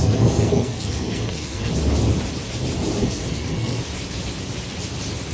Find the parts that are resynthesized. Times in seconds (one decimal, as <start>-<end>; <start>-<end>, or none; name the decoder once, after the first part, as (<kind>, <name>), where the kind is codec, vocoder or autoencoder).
0.0-1.7 (codec, SNAC); 3.0-3.8